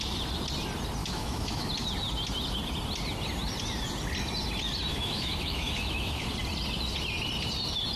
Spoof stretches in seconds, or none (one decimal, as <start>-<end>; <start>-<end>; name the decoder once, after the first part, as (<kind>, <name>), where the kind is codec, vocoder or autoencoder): 1.0-1.7 (autoencoder, DAC-VAE); 4.9-6.3